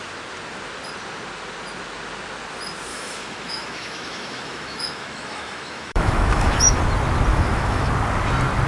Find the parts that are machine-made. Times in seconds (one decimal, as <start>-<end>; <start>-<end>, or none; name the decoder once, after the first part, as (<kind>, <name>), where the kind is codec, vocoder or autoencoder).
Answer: 2.9-6.8 (autoencoder, DAC-VAE); 7.3-7.9